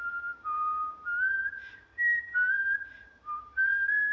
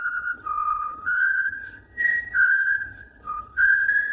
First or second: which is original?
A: first